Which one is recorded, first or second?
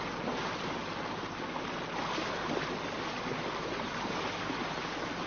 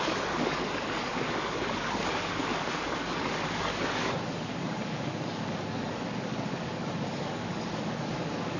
first